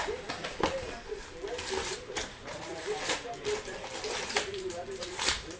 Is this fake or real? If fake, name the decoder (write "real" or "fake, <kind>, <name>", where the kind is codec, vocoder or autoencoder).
fake, vocoder, BigVGAN v2